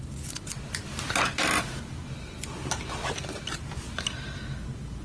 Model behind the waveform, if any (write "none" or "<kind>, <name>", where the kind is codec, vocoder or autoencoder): none